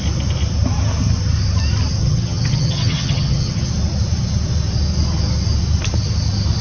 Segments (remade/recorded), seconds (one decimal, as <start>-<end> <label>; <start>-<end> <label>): 0.0-2.0 recorded; 2.0-3.7 remade; 3.7-6.6 recorded